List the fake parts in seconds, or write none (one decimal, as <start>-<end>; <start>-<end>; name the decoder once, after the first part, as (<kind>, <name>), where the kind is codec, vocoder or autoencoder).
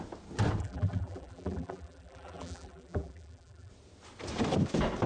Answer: 0.6-3.7 (vocoder, BigVGAN v2)